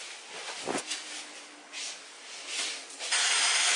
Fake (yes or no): no